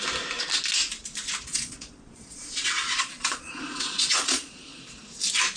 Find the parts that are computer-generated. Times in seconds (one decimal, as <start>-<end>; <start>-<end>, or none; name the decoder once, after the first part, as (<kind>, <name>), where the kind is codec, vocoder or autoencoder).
1.5-4.8 (vocoder, Vocos)